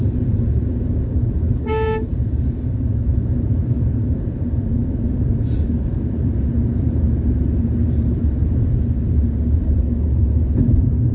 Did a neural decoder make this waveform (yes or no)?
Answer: yes